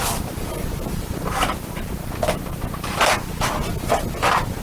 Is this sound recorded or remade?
recorded